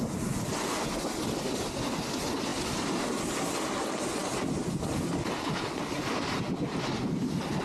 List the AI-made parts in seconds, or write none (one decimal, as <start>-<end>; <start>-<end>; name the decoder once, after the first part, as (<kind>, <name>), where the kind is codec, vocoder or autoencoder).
none